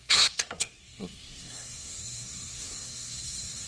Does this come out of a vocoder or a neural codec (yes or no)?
yes